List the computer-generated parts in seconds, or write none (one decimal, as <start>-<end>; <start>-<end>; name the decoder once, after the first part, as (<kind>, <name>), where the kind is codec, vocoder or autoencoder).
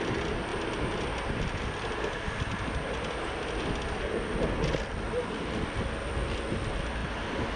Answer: none